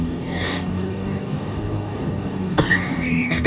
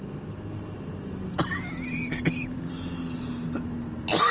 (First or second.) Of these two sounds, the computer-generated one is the first